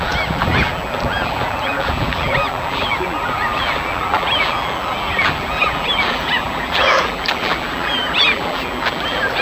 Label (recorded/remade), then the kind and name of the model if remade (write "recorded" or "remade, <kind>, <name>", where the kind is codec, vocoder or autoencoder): remade, vocoder, BigVGAN v2